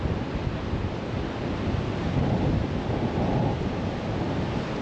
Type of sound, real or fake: real